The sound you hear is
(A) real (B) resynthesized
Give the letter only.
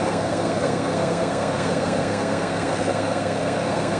B